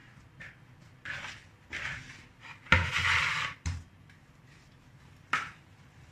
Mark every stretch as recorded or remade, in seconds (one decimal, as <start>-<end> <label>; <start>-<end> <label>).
0.0-3.2 recorded; 3.2-6.1 remade